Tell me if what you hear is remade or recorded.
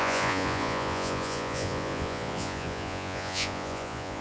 remade